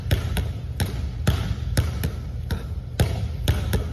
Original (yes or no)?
yes